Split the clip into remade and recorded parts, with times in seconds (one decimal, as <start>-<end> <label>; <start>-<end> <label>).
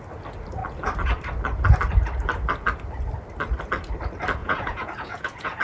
0.0-4.4 recorded; 4.4-5.6 remade